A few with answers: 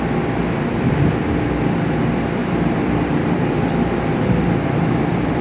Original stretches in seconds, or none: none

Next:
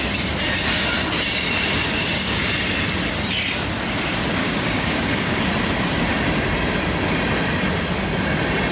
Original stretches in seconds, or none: 0.0-2.0; 2.5-4.4; 5.5-8.7

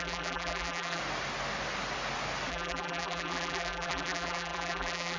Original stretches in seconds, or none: 1.0-2.5

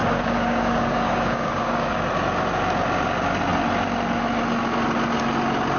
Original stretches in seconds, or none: 2.0-5.8

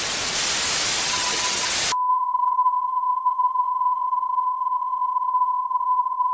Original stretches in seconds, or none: 0.0-1.0; 1.7-2.1

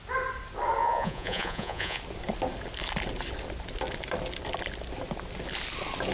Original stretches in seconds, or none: 0.0-0.8; 2.0-6.1

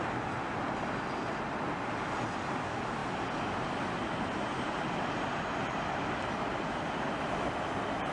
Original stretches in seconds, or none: 0.0-8.1

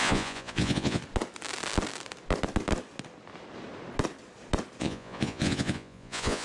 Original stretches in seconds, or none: 1.0-4.8